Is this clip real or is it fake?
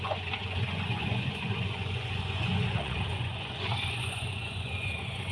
fake